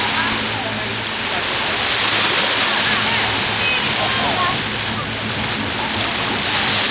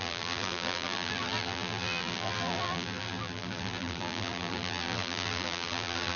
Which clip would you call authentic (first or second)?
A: first